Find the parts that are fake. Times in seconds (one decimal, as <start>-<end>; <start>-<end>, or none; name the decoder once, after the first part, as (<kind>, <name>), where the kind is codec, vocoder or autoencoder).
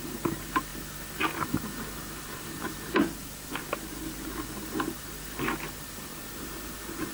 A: 0.0-6.1 (vocoder, BigVGAN v2)